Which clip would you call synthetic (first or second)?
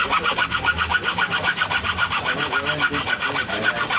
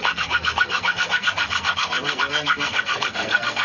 second